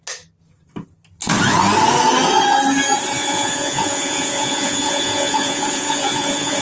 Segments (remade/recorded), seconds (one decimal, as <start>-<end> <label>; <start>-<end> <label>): 0.0-3.2 recorded; 3.2-6.6 remade